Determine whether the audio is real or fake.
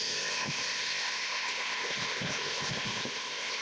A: fake